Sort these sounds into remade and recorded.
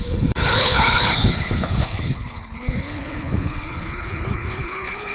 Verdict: remade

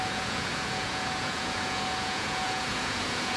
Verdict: remade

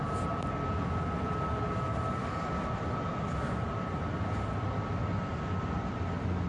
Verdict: remade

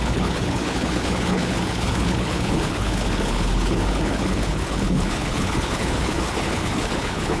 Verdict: remade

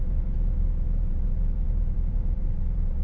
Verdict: remade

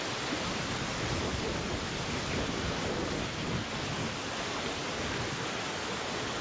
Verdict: recorded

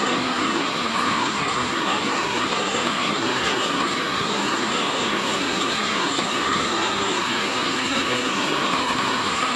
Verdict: remade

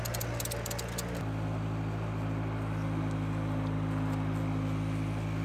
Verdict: recorded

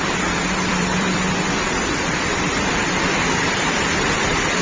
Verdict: remade